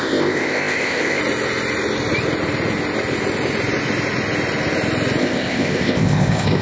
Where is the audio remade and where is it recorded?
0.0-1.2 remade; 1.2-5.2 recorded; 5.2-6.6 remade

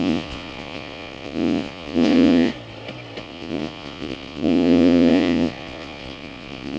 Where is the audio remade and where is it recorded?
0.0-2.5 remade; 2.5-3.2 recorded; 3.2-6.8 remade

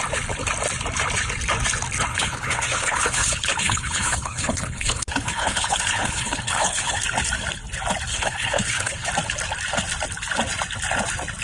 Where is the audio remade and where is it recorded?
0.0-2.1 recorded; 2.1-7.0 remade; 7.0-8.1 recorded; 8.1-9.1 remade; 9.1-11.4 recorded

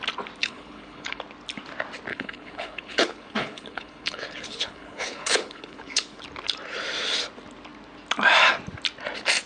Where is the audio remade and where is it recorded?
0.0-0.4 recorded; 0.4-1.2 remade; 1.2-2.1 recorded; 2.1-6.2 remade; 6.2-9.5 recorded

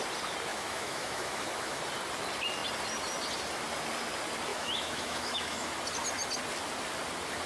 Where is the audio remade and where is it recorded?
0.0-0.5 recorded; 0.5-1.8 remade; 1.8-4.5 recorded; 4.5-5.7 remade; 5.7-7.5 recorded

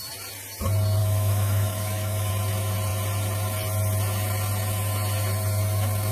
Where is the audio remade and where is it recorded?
0.0-1.0 recorded; 1.0-2.3 remade; 2.3-6.1 recorded

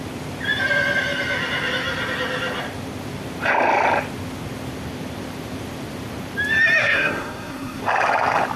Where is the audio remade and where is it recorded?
0.0-6.8 recorded; 6.8-7.8 remade; 7.8-8.6 recorded

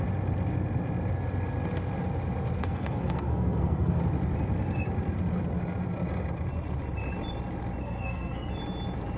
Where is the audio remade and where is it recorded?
0.0-2.6 recorded; 2.6-4.0 remade; 4.0-7.8 recorded; 7.8-8.5 remade; 8.5-9.2 recorded